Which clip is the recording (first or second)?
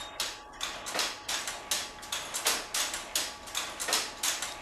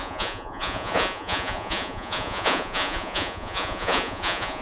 first